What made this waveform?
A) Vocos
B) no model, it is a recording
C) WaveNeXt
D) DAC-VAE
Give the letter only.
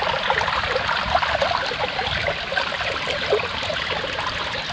B